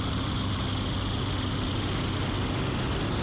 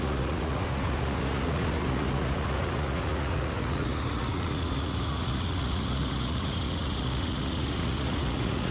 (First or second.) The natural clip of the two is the first